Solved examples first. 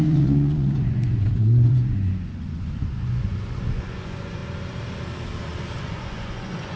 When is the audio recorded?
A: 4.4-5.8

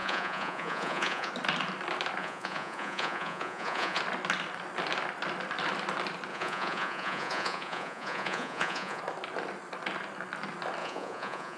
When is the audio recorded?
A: 1.3-2.2; 4.0-6.3; 9.0-10.8

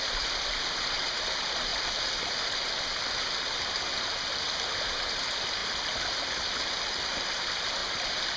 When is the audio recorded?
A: 0.0-8.4

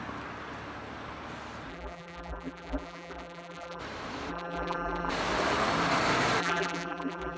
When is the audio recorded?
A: 0.0-1.7; 3.8-4.3; 5.1-6.4

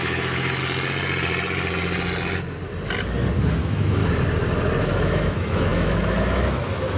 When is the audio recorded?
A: 0.6-3.5; 4.0-4.8

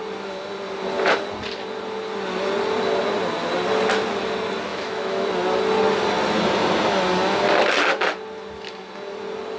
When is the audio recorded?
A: 0.0-4.7; 5.3-9.6

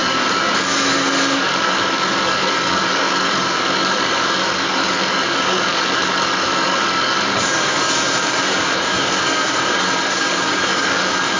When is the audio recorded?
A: none